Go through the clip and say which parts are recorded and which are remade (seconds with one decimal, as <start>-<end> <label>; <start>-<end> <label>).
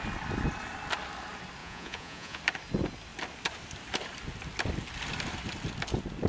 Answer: 0.0-1.6 recorded; 1.6-2.4 remade; 2.4-6.3 recorded